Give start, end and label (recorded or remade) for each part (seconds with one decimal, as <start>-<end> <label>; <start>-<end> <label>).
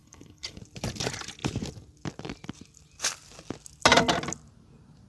0.0-0.6 remade; 0.6-5.1 recorded